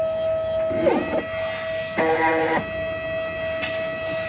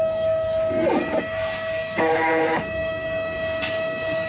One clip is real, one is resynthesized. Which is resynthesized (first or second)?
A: second